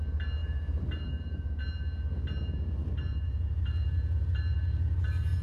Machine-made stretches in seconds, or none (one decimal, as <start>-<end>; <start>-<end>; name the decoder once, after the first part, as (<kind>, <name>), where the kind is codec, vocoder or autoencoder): 0.4-1.6 (vocoder, BigVGAN v2)